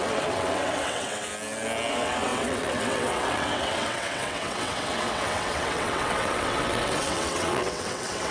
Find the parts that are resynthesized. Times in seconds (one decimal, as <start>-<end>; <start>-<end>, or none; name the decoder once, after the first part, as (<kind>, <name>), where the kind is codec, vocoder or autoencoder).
0.0-1.3 (vocoder, WaveNeXt); 1.9-8.3